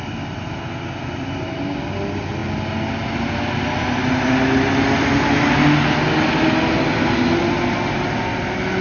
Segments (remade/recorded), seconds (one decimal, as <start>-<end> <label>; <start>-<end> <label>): 0.0-8.8 recorded